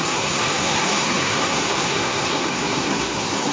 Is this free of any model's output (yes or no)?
no